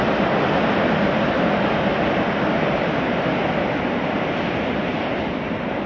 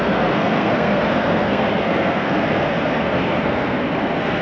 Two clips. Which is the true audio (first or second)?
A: first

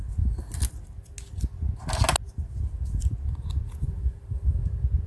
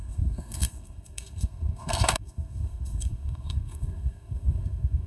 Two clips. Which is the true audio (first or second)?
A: first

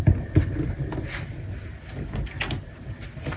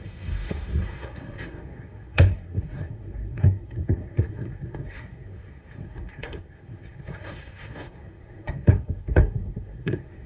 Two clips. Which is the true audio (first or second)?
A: first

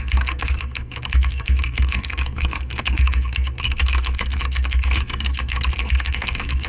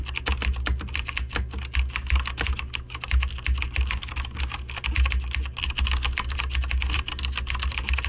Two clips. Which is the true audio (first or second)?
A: second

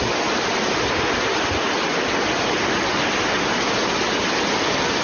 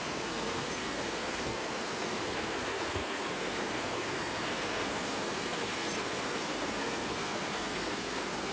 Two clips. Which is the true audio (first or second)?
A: first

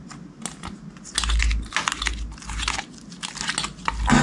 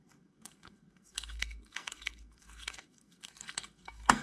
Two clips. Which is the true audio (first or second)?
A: first